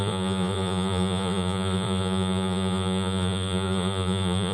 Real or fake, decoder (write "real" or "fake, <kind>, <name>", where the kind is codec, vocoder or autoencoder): fake, vocoder, Vocos